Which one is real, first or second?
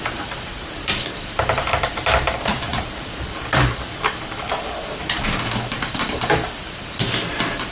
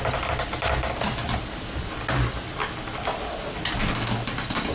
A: second